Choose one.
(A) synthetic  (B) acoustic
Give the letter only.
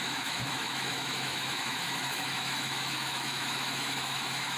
A